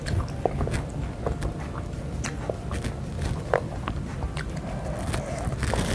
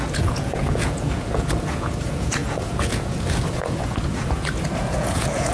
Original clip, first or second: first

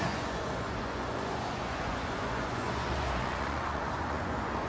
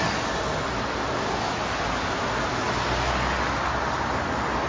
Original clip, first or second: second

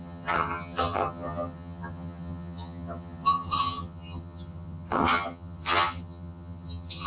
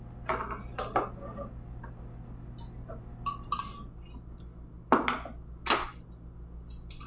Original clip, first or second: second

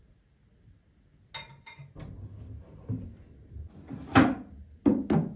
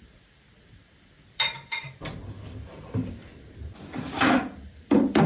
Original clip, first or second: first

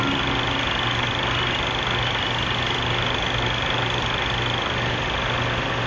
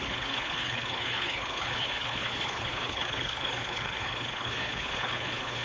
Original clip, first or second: first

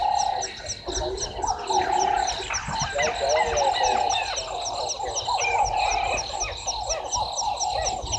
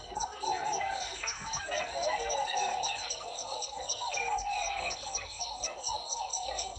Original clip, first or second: first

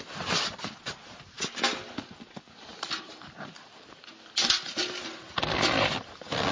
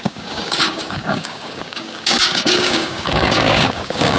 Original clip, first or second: first